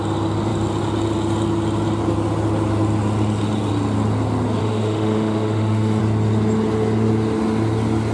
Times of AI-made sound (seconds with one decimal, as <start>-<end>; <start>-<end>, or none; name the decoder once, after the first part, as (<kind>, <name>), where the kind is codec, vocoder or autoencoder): 4.6-6.0 (autoencoder, DAC-VAE)